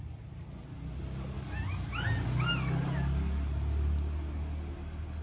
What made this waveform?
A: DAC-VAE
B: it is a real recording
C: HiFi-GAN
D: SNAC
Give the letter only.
B